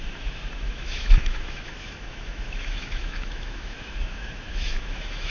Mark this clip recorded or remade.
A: remade